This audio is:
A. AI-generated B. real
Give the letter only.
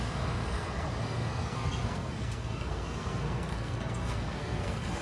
A